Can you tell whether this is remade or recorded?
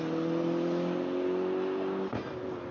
recorded